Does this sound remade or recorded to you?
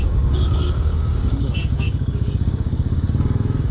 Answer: remade